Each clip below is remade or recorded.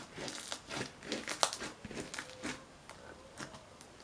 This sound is recorded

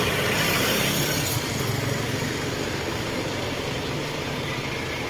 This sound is remade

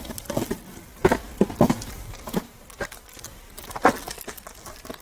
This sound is recorded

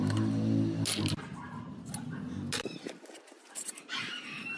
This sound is recorded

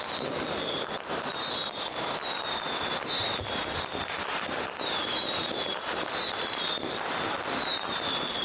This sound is remade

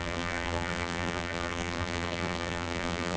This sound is remade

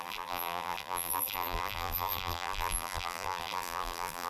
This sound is remade